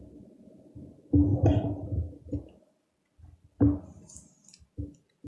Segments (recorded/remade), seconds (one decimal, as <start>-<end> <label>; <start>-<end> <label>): 0.0-5.3 recorded